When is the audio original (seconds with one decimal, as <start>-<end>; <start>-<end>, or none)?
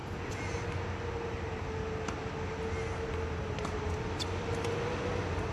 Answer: 0.0-5.5